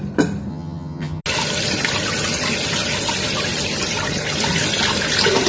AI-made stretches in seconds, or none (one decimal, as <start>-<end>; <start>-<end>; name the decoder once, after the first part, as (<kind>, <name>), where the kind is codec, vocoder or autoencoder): 0.5-1.2 (vocoder, HiFi-GAN)